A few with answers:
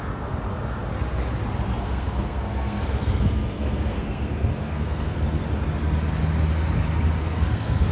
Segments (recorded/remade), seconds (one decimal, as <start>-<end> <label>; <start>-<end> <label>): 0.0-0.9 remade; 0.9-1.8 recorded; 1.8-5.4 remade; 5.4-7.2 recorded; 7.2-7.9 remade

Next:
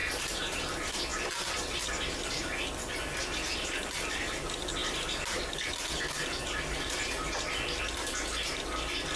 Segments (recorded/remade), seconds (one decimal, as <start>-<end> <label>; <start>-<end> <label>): 0.0-0.6 remade; 0.6-9.2 recorded

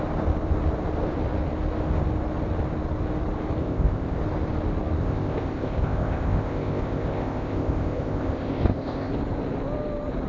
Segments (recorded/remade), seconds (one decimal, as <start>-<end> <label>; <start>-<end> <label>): 0.0-3.6 recorded; 3.6-4.2 remade; 4.2-5.0 recorded; 5.0-9.1 remade; 9.1-10.3 recorded